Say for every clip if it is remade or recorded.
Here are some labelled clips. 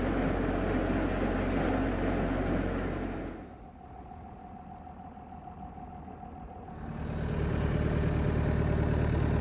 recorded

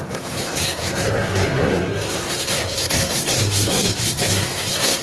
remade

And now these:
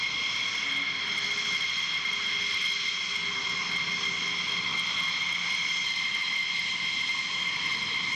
recorded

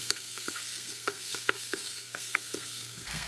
remade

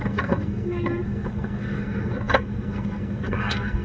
remade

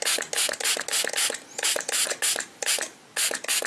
recorded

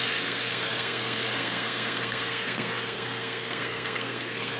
remade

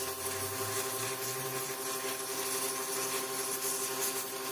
recorded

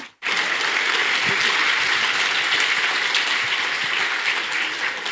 recorded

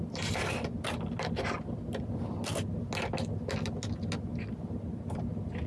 recorded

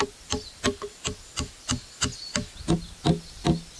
recorded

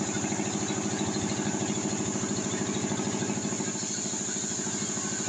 recorded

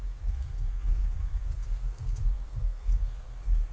remade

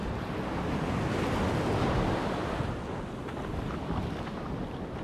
recorded